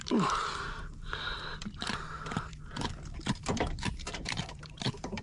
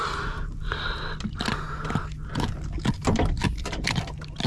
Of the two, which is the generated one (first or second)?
first